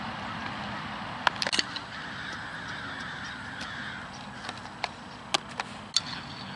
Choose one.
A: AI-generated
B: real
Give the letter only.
B